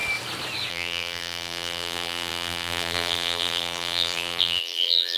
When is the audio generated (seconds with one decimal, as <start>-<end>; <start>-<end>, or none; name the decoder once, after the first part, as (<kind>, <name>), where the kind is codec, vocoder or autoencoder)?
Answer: 0.7-5.2 (vocoder, BigVGAN v2)

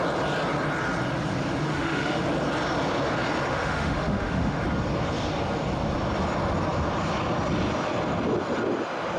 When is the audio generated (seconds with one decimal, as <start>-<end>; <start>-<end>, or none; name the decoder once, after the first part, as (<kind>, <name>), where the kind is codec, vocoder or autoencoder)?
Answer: 1.7-2.2 (autoencoder, DAC-VAE); 3.5-4.6

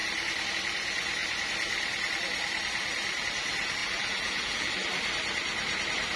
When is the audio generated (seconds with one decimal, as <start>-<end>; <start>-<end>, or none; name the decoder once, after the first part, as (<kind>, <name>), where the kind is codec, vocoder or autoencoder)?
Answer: 3.8-4.7 (vocoder, BigVGAN v2)

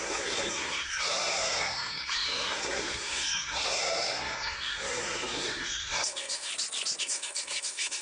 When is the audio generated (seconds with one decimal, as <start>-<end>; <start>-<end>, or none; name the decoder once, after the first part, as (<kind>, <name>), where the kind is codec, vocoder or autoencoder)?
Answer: 0.0-6.5 (codec, SNAC); 7.0-8.0